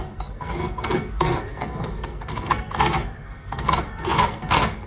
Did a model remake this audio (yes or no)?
yes